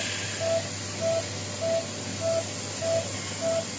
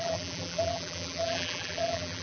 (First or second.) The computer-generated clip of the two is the second